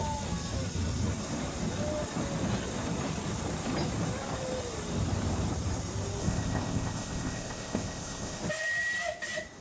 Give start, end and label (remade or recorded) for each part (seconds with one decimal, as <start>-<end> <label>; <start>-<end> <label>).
0.0-6.2 recorded; 6.2-8.4 remade; 8.4-9.6 recorded